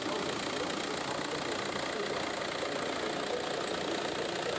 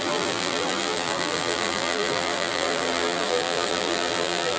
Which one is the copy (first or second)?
second